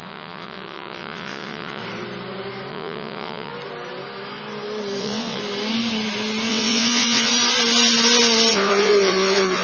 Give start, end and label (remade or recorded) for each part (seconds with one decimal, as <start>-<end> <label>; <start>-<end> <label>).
0.0-1.8 remade; 1.8-2.7 recorded; 2.7-3.5 remade; 3.5-5.0 recorded; 5.0-5.4 remade; 5.4-6.5 recorded; 6.5-7.3 remade; 7.3-8.5 recorded; 8.5-9.6 remade